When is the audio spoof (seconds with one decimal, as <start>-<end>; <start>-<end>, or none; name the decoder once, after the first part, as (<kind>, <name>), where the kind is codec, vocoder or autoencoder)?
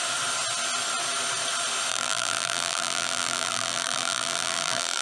1.9-5.0 (vocoder, BigVGAN v2)